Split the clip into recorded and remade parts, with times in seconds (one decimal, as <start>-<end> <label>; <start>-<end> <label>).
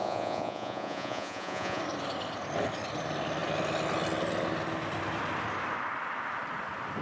0.0-1.8 remade; 1.8-7.0 recorded